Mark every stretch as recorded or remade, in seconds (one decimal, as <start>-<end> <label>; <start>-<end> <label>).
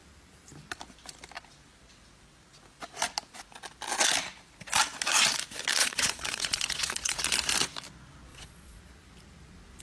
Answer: 0.0-5.8 recorded; 5.8-7.2 remade; 7.2-8.3 recorded; 8.3-8.8 remade; 8.8-9.8 recorded